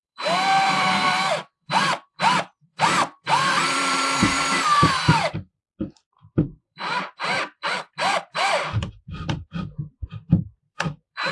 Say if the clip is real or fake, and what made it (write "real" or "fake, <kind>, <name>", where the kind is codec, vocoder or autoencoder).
fake, vocoder, BigVGAN v2